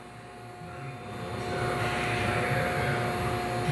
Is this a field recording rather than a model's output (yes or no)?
yes